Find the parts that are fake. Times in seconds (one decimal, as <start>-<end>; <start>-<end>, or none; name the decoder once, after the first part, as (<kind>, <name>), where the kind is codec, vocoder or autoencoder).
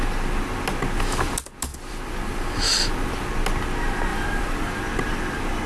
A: 1.7-3.3 (vocoder, BigVGAN v2); 4.1-4.8